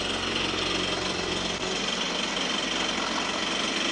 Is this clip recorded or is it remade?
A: recorded